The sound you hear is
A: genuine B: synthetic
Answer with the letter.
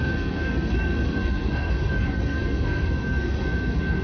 B